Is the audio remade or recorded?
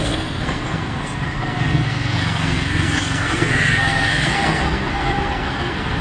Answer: remade